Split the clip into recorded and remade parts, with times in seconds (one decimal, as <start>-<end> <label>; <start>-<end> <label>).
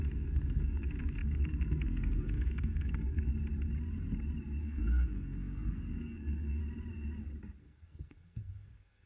0.0-3.3 remade; 3.3-4.6 recorded; 4.6-6.6 remade; 6.6-7.6 recorded; 7.6-9.1 remade